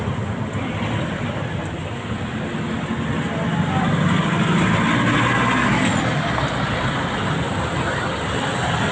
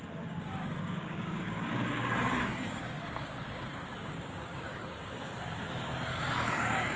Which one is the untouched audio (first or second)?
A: first